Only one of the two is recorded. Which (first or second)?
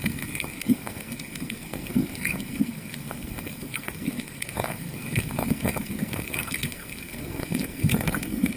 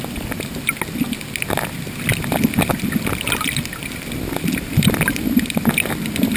second